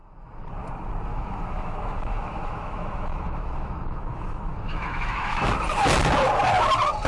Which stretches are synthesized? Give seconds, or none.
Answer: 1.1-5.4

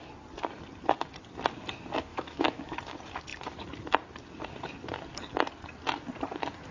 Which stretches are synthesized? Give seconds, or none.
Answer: 2.1-2.8